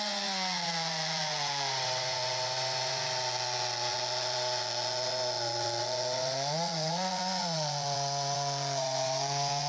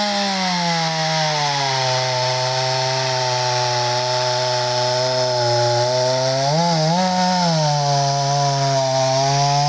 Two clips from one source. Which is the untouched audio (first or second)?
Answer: second